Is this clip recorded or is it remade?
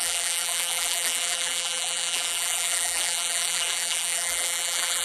remade